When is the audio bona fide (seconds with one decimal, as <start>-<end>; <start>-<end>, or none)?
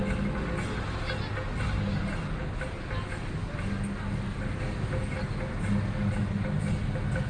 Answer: 0.0-7.3